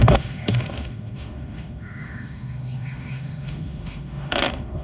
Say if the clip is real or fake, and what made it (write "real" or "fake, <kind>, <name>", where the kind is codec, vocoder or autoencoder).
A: fake, autoencoder, DAC-VAE